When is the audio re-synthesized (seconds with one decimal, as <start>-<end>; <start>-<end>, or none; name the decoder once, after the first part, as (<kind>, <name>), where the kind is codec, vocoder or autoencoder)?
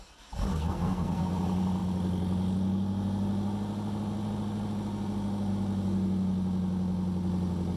0.5-1.4 (codec, SNAC)